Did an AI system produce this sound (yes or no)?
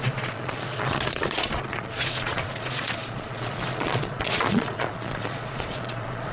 yes